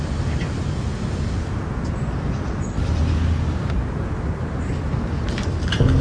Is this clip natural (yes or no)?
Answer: yes